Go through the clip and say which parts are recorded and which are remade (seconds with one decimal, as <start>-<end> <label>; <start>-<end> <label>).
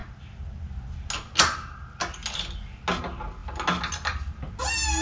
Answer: 0.0-5.0 recorded